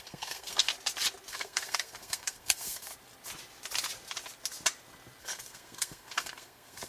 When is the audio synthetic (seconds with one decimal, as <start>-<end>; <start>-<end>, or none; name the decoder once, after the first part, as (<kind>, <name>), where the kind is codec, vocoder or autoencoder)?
0.0-0.7 (codec, SNAC); 1.3-2.9; 5.2-6.9